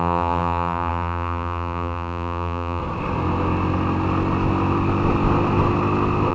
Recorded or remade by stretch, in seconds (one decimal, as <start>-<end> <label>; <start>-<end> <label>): 0.0-2.8 remade; 2.8-6.3 recorded